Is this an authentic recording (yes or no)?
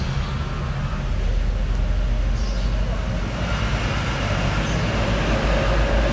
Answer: yes